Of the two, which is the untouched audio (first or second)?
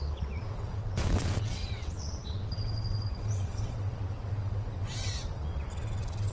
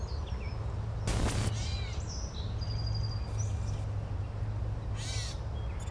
second